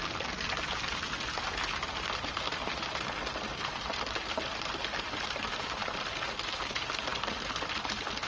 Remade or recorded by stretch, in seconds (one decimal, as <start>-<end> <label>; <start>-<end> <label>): 0.0-8.3 recorded